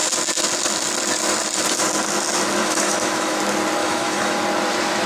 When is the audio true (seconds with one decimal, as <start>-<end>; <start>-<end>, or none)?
0.0-2.6; 3.4-3.8; 4.4-5.1